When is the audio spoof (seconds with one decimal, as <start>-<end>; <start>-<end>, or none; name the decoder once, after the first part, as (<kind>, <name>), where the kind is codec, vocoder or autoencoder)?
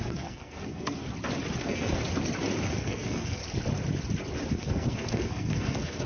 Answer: 0.0-1.0 (codec, SNAC); 1.6-2.0; 2.7-3.4; 4.5-6.1